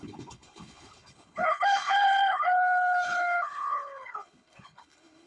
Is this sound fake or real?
fake